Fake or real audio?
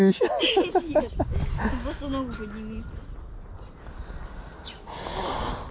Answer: real